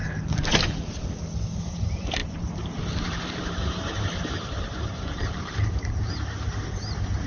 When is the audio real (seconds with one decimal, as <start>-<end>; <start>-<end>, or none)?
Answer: 0.0-1.6